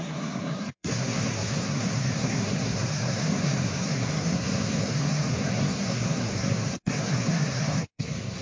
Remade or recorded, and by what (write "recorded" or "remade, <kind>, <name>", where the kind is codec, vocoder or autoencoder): remade, codec, SNAC